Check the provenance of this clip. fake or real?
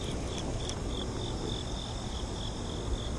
real